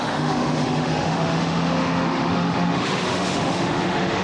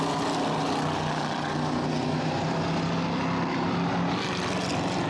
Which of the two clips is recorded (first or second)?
second